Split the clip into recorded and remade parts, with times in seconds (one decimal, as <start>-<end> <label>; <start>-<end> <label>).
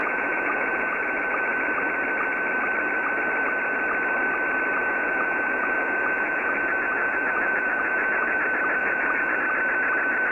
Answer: 0.0-1.0 remade; 1.0-4.8 recorded; 4.8-8.4 remade; 8.4-8.8 recorded; 8.8-9.4 remade; 9.4-10.3 recorded